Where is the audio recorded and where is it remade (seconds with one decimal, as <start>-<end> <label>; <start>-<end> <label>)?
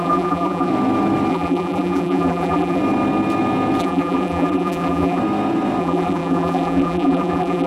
0.0-0.7 remade; 0.7-1.3 recorded; 1.3-2.8 remade; 2.8-3.8 recorded; 3.8-5.2 remade; 5.2-5.8 recorded; 5.8-7.7 remade